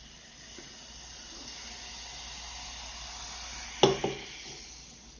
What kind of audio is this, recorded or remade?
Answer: recorded